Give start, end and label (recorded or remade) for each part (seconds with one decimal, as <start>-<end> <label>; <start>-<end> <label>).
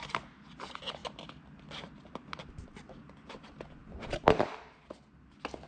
0.0-5.7 recorded